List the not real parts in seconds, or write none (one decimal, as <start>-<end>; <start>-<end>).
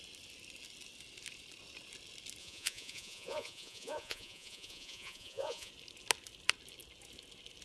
2.4-5.7